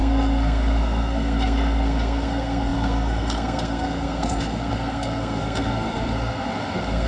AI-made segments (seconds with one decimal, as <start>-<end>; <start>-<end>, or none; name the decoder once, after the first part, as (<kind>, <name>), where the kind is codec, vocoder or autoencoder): 0.0-7.1 (codec, SNAC)

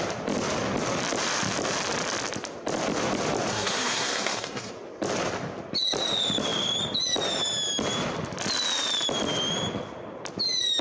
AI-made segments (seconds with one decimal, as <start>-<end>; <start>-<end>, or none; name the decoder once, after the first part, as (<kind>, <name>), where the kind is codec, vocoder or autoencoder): 3.5-4.7 (codec, SNAC)